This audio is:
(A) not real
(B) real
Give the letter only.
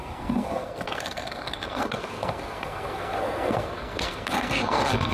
A